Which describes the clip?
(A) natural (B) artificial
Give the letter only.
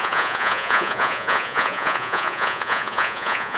B